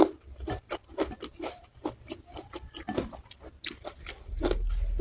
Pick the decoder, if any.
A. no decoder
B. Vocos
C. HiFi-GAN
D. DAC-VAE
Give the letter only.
A